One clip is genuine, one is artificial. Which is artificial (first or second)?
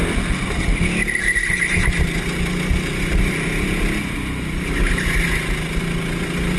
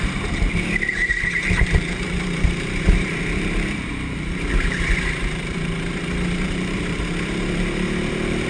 second